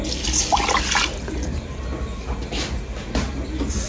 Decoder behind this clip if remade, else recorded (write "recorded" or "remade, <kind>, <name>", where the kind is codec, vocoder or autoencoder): recorded